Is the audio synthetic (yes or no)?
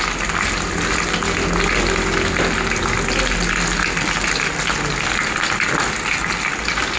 no